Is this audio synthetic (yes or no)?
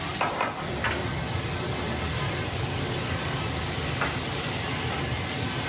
no